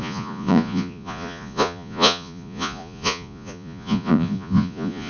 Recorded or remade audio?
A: remade